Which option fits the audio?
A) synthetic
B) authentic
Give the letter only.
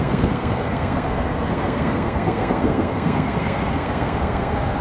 A